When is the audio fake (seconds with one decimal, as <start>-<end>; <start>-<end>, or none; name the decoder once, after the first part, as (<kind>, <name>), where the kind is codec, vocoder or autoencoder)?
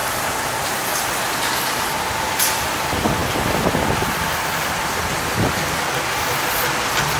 0.0-0.9 (vocoder, BigVGAN v2)